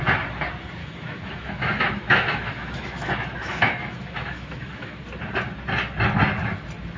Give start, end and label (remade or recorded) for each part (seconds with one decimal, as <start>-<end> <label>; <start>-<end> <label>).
0.0-0.8 recorded; 0.8-5.0 remade; 5.0-7.0 recorded